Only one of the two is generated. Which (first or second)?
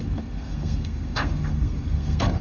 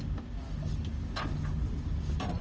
first